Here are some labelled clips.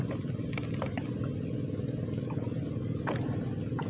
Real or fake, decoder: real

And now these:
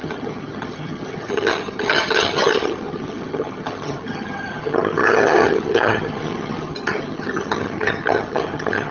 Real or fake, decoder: fake, vocoder, HiFi-GAN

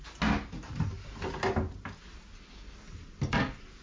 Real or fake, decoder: real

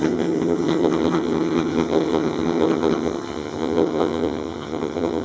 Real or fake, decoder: fake, vocoder, HiFi-GAN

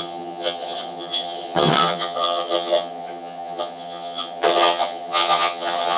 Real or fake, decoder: fake, vocoder, HiFi-GAN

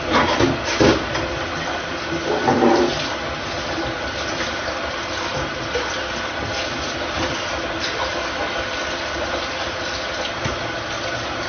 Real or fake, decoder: real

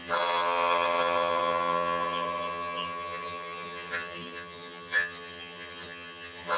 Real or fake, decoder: fake, vocoder, HiFi-GAN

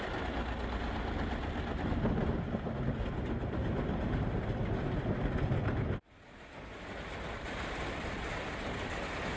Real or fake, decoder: real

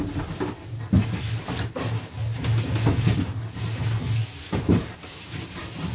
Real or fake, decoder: real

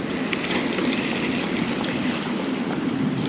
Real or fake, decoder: real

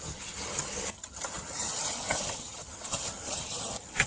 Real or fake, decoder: fake, vocoder, HiFi-GAN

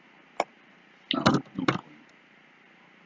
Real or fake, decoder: real